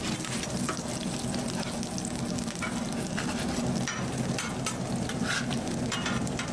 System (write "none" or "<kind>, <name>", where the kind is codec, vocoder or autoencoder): none